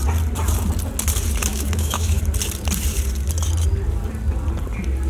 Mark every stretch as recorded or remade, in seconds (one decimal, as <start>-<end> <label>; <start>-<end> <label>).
0.0-1.5 recorded; 1.5-2.2 remade; 2.2-5.1 recorded